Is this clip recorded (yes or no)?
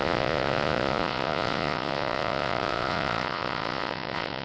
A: no